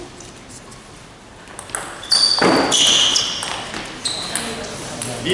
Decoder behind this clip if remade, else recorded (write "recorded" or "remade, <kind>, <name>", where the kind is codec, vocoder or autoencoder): recorded